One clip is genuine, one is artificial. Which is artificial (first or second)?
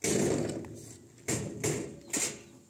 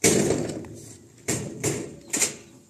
second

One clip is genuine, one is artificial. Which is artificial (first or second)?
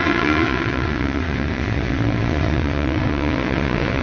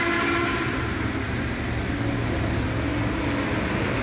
first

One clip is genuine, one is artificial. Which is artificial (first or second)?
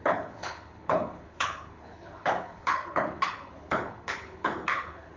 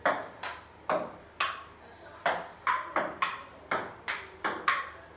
first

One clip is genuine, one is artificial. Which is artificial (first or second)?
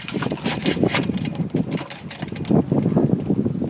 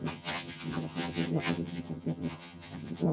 second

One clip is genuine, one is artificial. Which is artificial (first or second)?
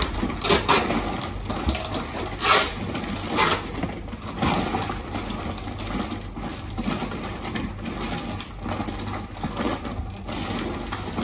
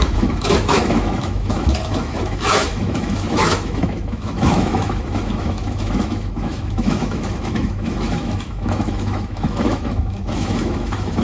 second